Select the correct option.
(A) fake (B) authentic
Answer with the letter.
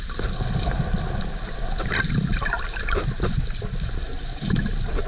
B